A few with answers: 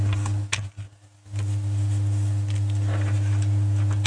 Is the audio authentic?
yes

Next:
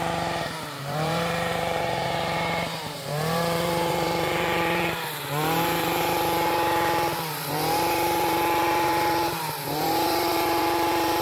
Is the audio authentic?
no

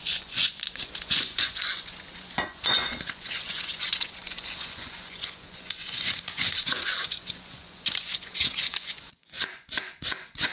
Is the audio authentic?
no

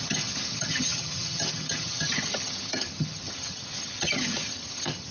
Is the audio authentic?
no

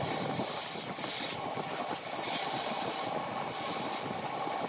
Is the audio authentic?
yes